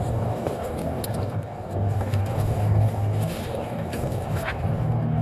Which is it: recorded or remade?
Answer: remade